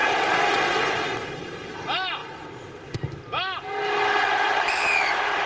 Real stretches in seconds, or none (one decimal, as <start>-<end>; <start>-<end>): 0.0-5.5